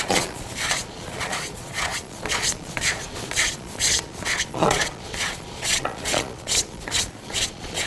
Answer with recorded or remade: remade